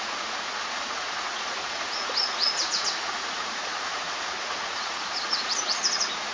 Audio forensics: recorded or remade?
remade